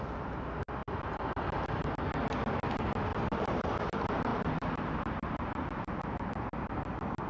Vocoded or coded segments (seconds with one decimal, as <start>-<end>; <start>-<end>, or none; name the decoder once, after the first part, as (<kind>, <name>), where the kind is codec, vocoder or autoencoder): 3.1-3.8 (vocoder, BigVGAN v2); 4.3-4.9